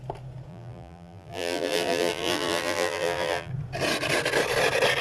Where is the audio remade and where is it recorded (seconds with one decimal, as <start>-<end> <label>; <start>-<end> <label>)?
0.0-0.5 recorded; 0.5-3.5 remade; 3.5-5.0 recorded